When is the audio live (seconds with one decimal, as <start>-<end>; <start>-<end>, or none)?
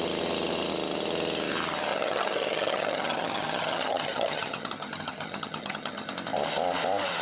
0.0-1.9; 6.1-7.2